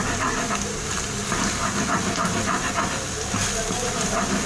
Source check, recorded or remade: recorded